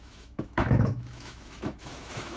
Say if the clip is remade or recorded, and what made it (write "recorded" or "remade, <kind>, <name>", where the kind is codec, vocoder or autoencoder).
remade, autoencoder, DAC-VAE